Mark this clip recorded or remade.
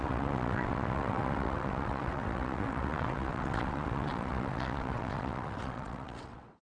remade